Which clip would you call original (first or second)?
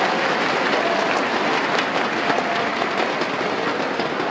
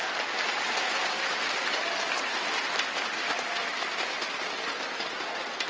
first